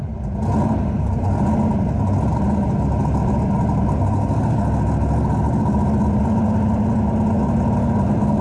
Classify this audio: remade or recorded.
recorded